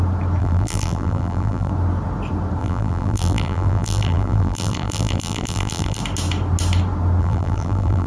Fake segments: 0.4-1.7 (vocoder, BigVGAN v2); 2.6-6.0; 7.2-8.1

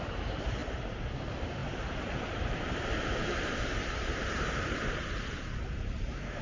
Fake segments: 0.0-0.6 (vocoder, BigVGAN v2); 1.2-6.4

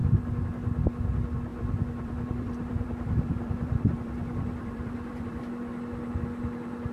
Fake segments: 1.5-5.4 (vocoder, BigVGAN v2)

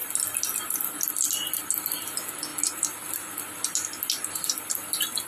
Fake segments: none